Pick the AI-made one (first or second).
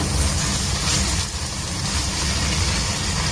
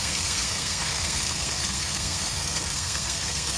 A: second